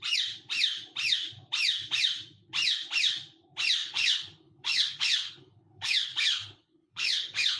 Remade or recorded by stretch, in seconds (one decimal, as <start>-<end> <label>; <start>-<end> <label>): 0.0-3.8 recorded; 3.8-7.6 remade

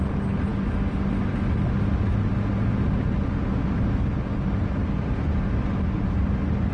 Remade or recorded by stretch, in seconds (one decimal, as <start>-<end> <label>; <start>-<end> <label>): 0.0-6.7 recorded

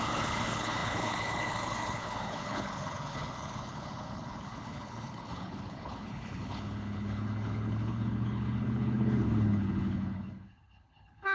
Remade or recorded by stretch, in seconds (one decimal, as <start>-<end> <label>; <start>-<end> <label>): 0.0-11.3 remade

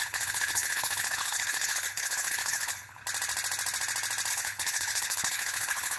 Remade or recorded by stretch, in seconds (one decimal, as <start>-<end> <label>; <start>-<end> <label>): 0.0-3.0 remade; 3.0-4.3 recorded; 4.3-6.0 remade